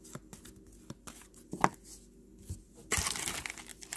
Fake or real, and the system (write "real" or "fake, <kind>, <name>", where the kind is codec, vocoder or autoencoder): real